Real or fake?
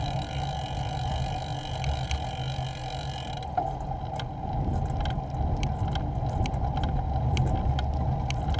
real